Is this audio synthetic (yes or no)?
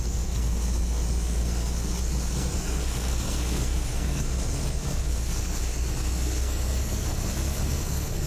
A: yes